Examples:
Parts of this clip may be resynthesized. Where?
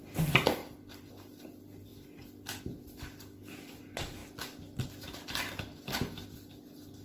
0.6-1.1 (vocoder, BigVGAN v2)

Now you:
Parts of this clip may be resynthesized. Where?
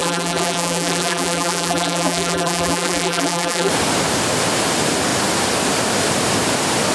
0.0-3.7 (vocoder, BigVGAN v2)